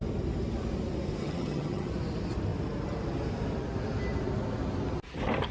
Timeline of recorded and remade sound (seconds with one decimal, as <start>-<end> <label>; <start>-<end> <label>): 0.0-1.2 recorded; 1.2-1.9 remade; 1.9-5.5 recorded